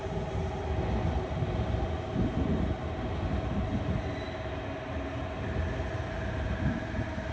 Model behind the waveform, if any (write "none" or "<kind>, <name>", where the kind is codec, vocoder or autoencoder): none